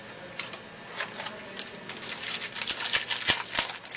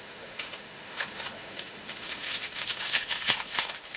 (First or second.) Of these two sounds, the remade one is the second